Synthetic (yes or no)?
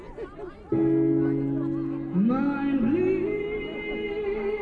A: no